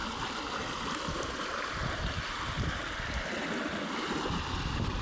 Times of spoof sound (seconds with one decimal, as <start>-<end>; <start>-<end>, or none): none